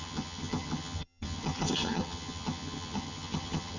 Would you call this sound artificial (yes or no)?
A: yes